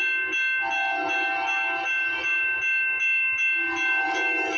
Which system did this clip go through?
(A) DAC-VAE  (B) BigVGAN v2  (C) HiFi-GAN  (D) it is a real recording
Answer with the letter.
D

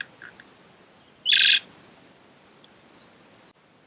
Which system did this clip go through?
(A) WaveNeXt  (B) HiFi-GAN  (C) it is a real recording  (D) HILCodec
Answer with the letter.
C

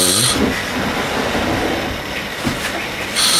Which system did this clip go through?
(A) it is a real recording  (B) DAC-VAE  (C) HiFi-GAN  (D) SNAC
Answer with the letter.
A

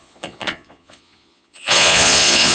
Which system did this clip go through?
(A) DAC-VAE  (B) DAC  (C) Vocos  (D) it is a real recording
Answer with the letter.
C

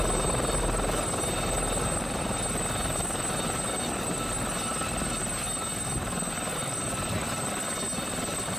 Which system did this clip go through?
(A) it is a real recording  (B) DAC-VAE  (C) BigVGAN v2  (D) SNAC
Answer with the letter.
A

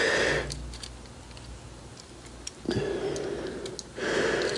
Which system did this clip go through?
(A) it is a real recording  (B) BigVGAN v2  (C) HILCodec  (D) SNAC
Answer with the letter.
A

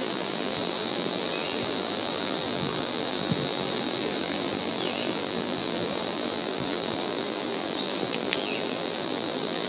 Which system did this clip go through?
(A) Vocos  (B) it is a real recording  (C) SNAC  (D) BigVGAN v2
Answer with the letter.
D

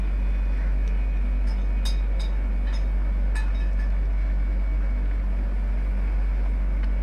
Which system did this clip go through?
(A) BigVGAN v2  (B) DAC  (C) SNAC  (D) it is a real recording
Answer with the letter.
D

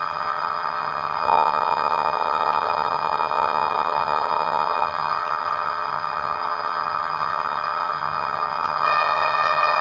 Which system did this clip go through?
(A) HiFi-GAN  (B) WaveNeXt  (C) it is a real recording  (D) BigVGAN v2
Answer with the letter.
A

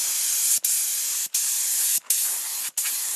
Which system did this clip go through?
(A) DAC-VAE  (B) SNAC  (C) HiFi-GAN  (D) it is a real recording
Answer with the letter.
D